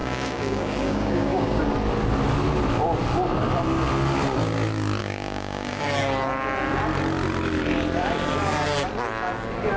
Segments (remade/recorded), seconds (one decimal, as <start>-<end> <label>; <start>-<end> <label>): 0.0-1.6 remade; 1.6-5.0 recorded; 5.0-5.8 remade; 5.8-9.8 recorded